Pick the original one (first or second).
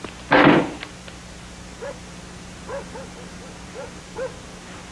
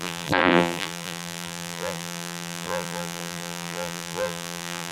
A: first